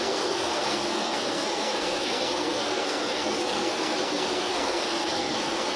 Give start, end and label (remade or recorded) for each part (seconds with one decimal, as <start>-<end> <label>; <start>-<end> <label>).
0.0-5.8 remade